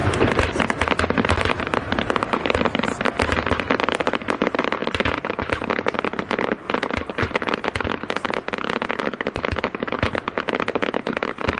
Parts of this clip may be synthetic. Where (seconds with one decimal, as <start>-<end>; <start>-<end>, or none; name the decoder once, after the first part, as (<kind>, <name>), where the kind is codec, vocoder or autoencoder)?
4.8-5.5 (vocoder, BigVGAN v2)